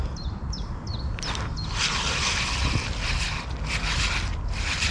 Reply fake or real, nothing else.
real